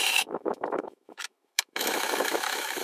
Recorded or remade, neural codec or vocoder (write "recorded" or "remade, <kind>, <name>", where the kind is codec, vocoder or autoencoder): remade, autoencoder, DAC-VAE